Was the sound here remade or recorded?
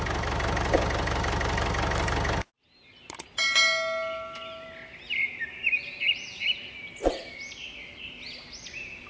recorded